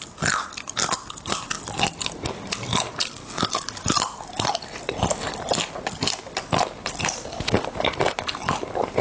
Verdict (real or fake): real